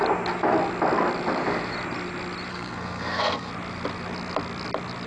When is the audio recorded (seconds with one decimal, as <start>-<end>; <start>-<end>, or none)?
0.0-2.5; 3.5-5.1